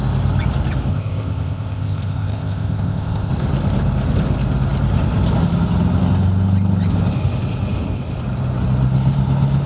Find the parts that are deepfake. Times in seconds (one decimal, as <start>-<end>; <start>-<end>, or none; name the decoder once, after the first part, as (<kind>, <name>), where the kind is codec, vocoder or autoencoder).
0.9-3.3 (codec, ZipCodec)